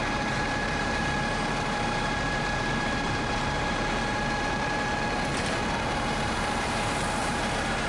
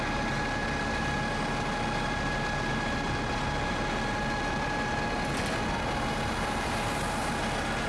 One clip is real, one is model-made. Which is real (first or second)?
second